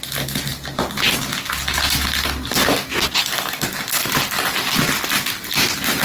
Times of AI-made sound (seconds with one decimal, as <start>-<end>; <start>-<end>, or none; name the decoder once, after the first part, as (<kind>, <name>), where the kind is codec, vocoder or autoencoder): none